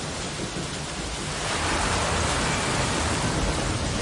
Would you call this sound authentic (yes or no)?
yes